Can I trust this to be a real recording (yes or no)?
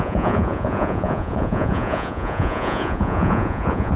no